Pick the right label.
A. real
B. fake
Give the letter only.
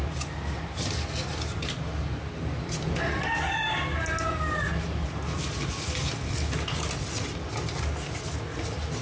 A